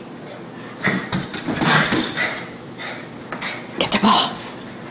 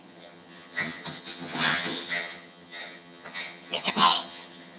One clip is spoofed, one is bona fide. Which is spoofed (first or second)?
second